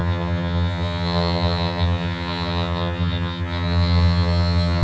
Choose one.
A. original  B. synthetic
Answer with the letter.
B